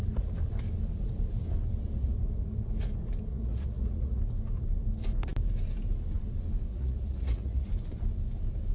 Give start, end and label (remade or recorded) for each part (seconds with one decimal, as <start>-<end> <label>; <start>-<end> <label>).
0.0-3.3 recorded; 3.3-4.2 remade; 4.2-6.7 recorded; 6.7-7.7 remade; 7.7-8.7 recorded